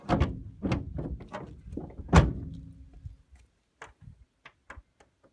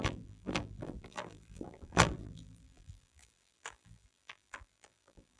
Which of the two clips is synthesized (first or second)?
second